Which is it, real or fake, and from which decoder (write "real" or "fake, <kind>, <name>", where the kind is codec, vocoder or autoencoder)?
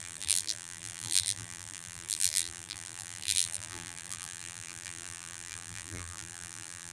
fake, vocoder, BigVGAN v2